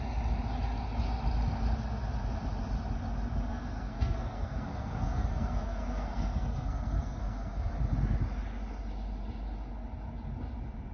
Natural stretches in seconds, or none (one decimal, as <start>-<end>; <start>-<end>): 0.0-3.5; 7.7-10.9